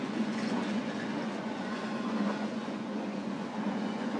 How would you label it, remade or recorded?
remade